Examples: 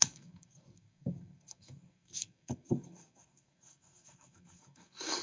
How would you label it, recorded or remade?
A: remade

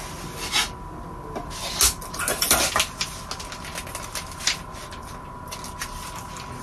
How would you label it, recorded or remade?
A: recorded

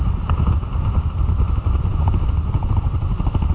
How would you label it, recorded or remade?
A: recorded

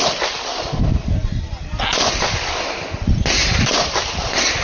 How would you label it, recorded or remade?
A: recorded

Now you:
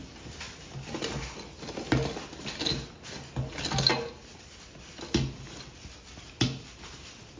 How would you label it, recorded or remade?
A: recorded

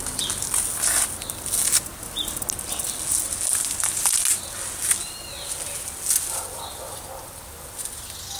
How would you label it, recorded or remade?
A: recorded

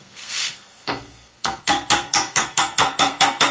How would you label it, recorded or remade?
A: remade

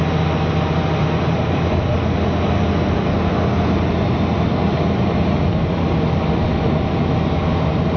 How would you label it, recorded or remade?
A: recorded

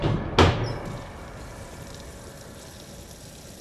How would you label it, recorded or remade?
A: recorded